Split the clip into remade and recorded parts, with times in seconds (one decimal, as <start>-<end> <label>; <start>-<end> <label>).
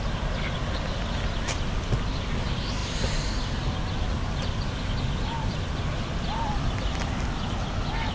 0.0-8.1 recorded